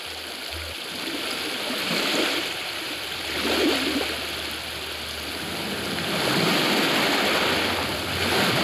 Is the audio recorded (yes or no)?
yes